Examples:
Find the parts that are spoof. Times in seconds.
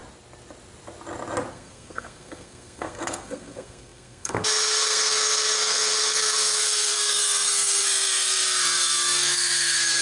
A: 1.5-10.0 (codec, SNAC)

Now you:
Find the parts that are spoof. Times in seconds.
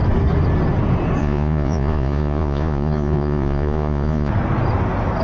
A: 1.2-4.3 (vocoder, Vocos)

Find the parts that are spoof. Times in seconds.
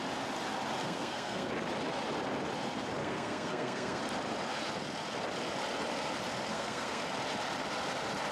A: 0.8-1.5 (codec, SNAC); 3.0-4.0; 6.5-7.0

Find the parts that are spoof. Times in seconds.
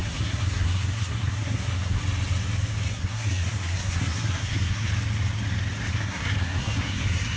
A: 0.0-2.0 (codec, SNAC); 2.9-4.9; 5.9-7.4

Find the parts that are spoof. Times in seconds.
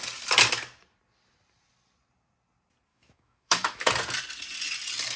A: 2.9-3.9 (autoencoder, DAC-VAE)